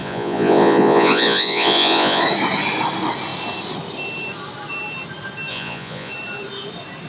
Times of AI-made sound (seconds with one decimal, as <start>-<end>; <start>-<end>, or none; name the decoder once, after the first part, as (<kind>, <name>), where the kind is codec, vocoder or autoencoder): 0.0-2.2 (vocoder, Vocos); 5.5-6.1